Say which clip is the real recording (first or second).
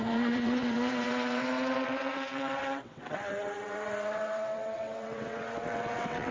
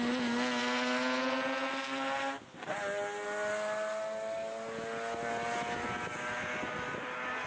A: second